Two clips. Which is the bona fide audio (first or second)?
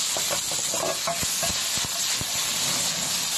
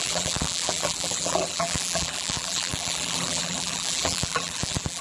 first